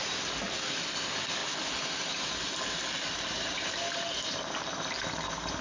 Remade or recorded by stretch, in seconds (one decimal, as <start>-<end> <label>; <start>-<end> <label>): 0.0-5.6 recorded